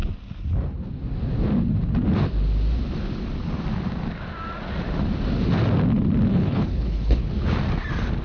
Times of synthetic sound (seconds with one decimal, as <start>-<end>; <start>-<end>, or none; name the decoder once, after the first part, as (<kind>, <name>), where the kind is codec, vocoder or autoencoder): 6.3-7.3 (codec, HILCodec)